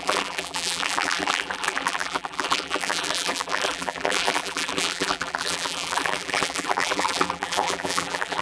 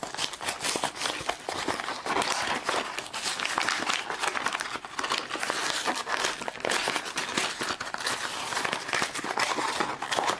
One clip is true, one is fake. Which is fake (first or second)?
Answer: first